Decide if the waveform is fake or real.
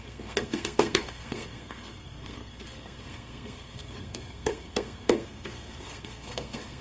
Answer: fake